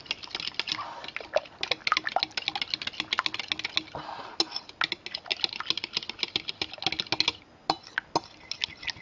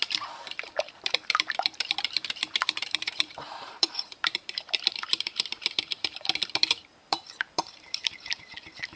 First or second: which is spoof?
second